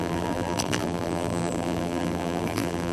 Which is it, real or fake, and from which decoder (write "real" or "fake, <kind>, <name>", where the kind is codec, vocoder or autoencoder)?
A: fake, vocoder, BigVGAN v2